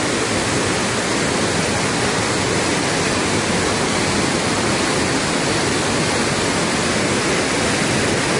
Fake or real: real